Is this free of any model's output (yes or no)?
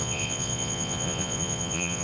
no